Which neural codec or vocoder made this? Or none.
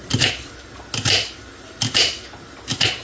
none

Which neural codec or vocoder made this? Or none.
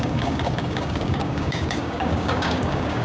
codec, DAC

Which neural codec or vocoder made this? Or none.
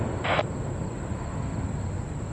none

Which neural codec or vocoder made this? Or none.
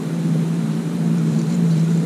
vocoder, BigVGAN v2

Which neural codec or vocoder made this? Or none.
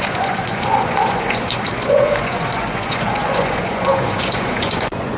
vocoder, Vocos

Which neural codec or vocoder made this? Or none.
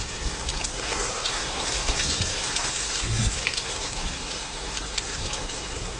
codec, SNAC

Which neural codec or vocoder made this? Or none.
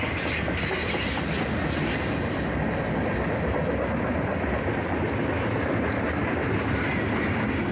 none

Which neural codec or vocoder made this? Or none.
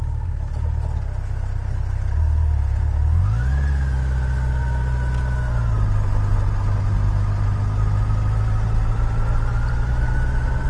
none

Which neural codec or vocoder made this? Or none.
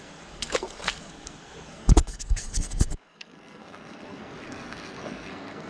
codec, SNAC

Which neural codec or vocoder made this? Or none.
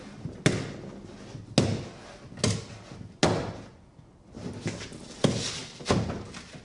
none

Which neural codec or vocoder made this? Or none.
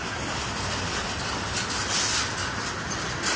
none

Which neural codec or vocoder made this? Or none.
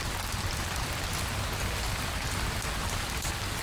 none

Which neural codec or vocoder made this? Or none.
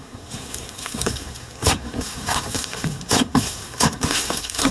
codec, SNAC